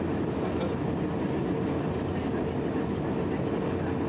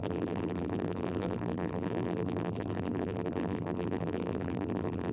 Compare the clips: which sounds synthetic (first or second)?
second